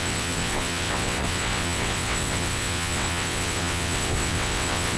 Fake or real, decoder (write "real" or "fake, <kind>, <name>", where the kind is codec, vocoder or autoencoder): fake, vocoder, WaveNeXt